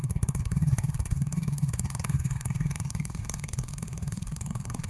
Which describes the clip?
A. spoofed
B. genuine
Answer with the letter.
A